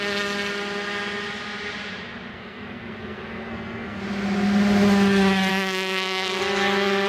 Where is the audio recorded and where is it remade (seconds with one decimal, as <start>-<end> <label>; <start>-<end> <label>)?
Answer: 0.0-2.3 recorded; 2.3-4.0 remade; 4.0-5.5 recorded; 5.5-6.4 remade; 6.4-7.1 recorded